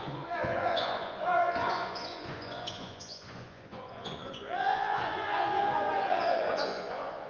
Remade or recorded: remade